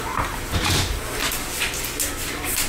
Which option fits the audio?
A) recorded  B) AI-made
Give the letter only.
A